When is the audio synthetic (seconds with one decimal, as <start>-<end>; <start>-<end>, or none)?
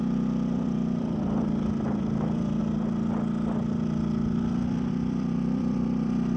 0.0-2.6; 4.9-6.4